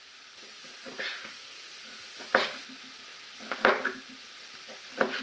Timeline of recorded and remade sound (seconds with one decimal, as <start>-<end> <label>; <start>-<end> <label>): 0.0-1.2 recorded; 1.2-1.7 remade; 1.7-5.2 recorded